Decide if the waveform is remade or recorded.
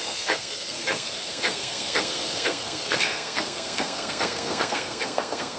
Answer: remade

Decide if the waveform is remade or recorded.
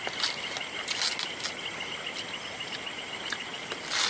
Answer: recorded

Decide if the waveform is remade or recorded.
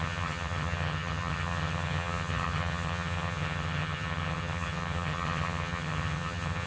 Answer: remade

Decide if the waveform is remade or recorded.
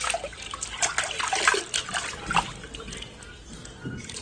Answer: recorded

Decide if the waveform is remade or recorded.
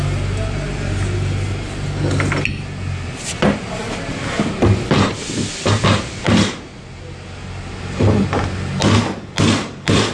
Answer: recorded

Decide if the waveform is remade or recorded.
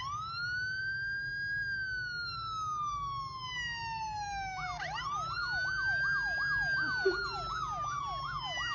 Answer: recorded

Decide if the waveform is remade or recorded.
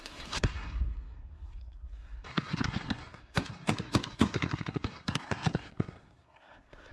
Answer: remade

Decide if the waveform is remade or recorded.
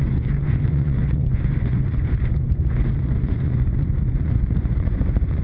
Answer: remade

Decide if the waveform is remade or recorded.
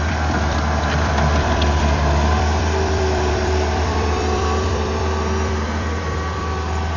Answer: remade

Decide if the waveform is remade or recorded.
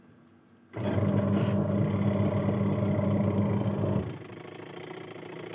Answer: recorded